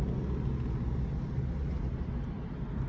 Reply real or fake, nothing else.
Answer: real